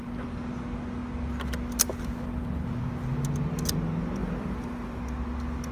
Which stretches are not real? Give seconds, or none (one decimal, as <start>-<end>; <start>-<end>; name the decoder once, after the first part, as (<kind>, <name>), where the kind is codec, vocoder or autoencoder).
4.2-5.0 (vocoder, BigVGAN v2)